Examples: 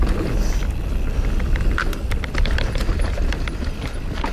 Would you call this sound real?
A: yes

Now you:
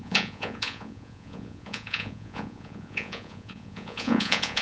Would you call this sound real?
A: no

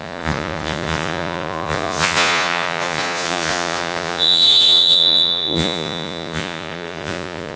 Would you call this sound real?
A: no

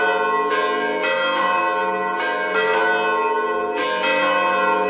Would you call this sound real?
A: yes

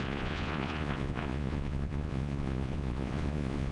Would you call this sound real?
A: no